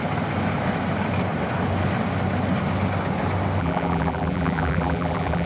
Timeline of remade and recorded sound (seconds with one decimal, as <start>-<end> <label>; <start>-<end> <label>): 0.0-3.6 recorded; 3.6-5.5 remade